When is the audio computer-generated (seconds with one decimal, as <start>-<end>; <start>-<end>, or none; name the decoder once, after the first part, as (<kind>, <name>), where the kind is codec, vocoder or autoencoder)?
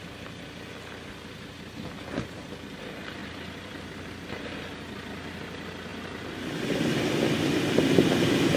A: 3.2-4.4 (vocoder, BigVGAN v2); 5.9-6.6